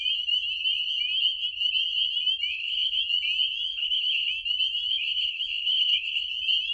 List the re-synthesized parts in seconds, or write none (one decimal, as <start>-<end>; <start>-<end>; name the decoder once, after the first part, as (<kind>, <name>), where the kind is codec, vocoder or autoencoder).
2.5-3.0 (codec, HILCodec); 3.7-4.3; 4.9-6.3